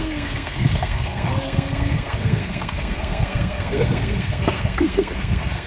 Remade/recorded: remade